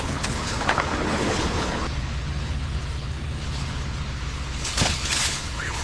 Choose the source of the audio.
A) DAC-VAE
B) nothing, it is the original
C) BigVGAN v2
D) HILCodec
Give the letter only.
D